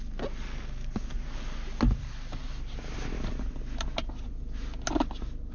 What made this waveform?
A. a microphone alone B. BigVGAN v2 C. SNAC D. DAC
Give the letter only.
A